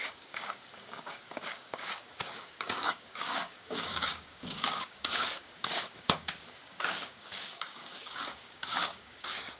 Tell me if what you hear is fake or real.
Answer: fake